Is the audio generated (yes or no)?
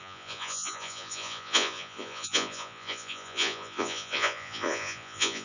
yes